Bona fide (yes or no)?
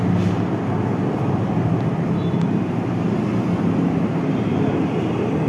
yes